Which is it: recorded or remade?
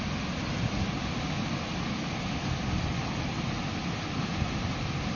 recorded